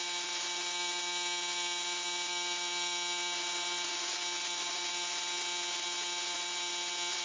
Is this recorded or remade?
recorded